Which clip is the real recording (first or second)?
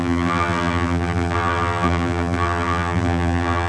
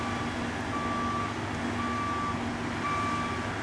second